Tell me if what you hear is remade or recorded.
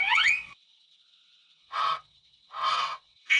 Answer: remade